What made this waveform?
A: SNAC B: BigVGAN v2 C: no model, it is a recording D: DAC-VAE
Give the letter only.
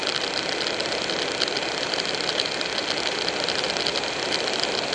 B